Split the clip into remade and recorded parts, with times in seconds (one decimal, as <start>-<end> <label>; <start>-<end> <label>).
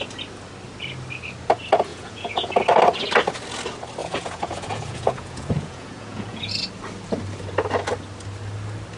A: 0.0-1.9 recorded; 1.9-2.5 remade; 2.5-4.0 recorded; 4.0-6.5 remade; 6.5-9.0 recorded